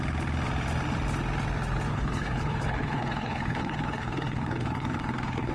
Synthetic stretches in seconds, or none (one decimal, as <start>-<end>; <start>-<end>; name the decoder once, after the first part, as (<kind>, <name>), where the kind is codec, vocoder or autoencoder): 1.9-5.5 (codec, HILCodec)